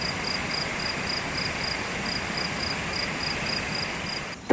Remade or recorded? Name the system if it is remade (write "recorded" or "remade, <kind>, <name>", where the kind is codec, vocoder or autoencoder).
recorded